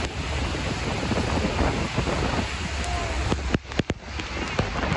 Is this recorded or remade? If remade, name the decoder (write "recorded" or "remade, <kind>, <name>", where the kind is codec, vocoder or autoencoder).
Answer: recorded